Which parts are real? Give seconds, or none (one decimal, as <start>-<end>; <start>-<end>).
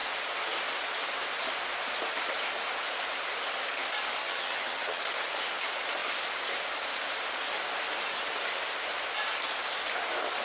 0.0-4.2; 5.0-10.4